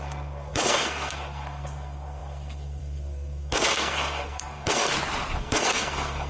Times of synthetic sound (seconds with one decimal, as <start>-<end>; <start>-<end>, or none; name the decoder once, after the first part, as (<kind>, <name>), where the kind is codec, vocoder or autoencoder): 0.0-4.9 (codec, SNAC); 5.4-6.3